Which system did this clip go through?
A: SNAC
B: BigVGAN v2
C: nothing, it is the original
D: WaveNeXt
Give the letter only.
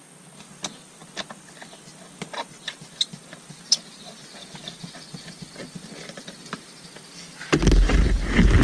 C